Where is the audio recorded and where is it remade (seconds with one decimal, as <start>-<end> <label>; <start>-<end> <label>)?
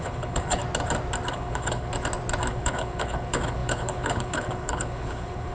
0.0-0.6 remade; 0.6-1.3 recorded; 1.3-1.9 remade; 1.9-2.5 recorded; 2.5-5.5 remade